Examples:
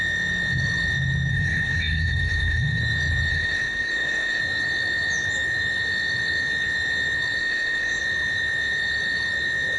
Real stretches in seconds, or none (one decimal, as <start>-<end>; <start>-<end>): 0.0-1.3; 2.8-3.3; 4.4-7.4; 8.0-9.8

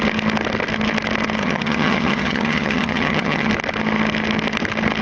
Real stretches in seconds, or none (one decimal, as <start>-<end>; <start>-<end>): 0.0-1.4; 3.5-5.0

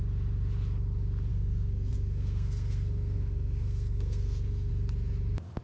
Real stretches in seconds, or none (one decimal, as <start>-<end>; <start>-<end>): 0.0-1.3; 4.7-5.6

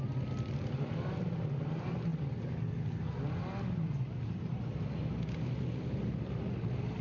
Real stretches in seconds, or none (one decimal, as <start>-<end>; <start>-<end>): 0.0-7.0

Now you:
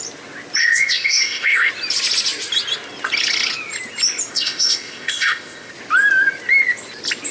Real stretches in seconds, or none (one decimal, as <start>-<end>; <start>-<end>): 0.0-0.6; 1.7-4.3; 5.7-7.3

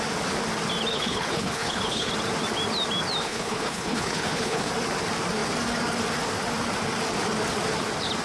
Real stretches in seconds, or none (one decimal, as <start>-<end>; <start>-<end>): 0.0-0.9; 2.1-3.2; 4.7-8.2

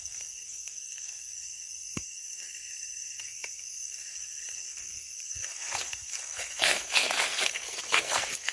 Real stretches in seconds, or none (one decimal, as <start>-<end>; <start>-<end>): none

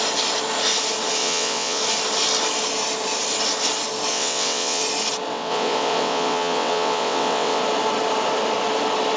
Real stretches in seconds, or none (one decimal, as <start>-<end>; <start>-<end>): 0.0-1.2; 1.8-4.1; 4.8-5.3; 7.6-9.2